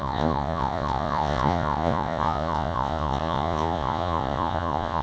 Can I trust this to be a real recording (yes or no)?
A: no